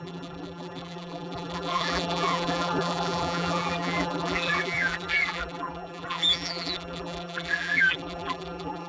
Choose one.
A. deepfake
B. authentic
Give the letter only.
A